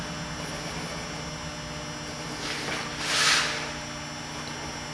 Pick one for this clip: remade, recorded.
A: recorded